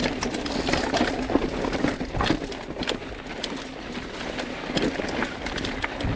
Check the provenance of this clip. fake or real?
real